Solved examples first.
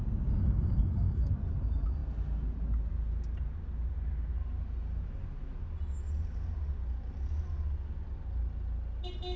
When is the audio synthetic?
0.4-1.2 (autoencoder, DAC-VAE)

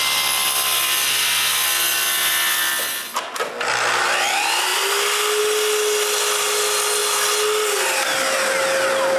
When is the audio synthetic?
none

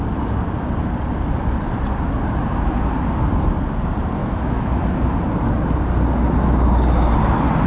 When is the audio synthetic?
4.2-4.8 (autoencoder, DAC-VAE)